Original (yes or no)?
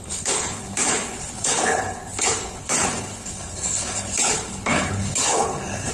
no